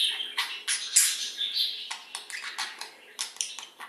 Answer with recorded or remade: recorded